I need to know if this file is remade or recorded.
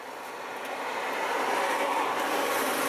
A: recorded